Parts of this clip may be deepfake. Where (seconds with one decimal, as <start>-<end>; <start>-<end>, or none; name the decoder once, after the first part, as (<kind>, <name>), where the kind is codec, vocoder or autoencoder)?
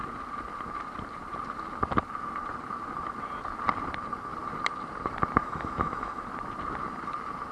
5.4-6.2 (autoencoder, DAC-VAE)